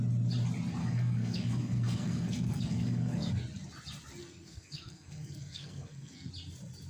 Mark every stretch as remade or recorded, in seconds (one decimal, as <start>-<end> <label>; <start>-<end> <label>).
0.0-0.8 recorded; 0.8-3.3 remade; 3.3-4.2 recorded; 4.2-6.3 remade; 6.3-6.9 recorded